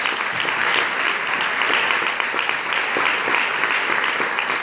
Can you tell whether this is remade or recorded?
recorded